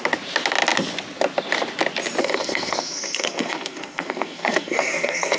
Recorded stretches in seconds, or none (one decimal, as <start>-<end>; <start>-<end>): 0.0-2.2